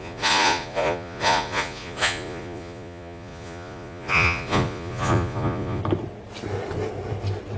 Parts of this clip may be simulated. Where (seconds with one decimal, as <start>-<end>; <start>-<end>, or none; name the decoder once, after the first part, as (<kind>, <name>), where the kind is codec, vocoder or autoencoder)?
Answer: 0.0-5.8 (vocoder, Vocos)